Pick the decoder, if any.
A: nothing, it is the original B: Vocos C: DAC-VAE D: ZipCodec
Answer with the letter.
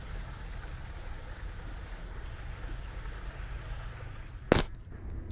A